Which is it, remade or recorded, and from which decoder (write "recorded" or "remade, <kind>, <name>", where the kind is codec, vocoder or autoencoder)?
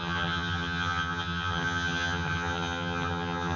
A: remade, vocoder, HiFi-GAN